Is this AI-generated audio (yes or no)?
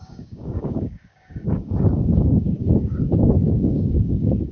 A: yes